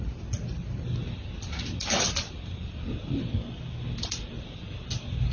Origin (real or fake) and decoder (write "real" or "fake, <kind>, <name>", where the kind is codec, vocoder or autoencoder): real